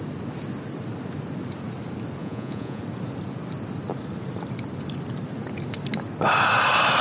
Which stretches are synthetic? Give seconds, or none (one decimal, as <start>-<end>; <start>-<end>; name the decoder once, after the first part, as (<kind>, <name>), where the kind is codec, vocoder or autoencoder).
2.2-2.8 (vocoder, Vocos)